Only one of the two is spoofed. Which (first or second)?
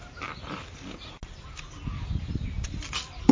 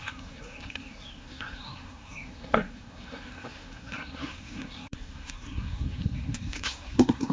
second